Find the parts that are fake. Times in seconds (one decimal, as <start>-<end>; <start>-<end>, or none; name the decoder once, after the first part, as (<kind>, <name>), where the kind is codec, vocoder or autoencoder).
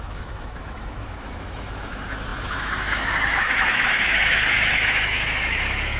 0.0-6.0 (autoencoder, DAC-VAE)